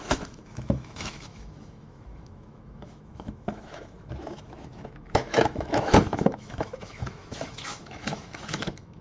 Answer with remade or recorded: remade